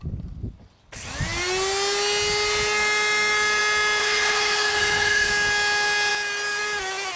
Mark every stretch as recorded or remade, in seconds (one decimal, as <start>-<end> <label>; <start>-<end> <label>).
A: 0.0-4.0 recorded; 4.0-5.3 remade; 5.3-7.2 recorded